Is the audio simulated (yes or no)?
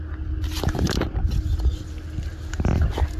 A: no